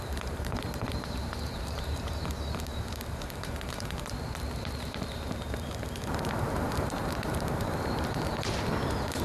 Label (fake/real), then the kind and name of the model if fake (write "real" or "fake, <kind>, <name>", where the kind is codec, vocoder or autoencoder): fake, vocoder, BigVGAN v2